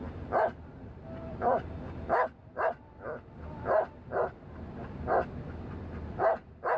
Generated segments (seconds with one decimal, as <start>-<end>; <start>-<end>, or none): none